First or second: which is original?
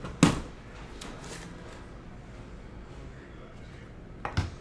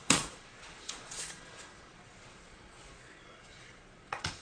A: first